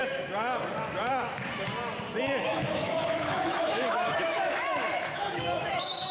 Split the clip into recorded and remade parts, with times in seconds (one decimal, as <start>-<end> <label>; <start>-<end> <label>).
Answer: 0.0-2.4 recorded; 2.4-6.1 remade